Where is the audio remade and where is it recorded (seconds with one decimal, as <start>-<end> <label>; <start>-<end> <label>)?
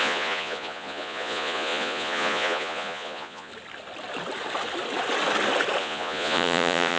0.0-3.5 remade; 3.5-5.8 recorded; 5.8-7.0 remade